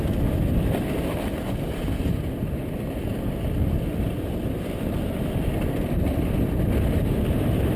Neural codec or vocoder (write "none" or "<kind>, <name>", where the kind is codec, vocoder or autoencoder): none